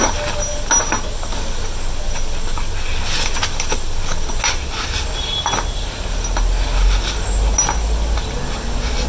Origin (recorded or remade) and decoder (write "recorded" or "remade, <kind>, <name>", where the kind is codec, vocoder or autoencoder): recorded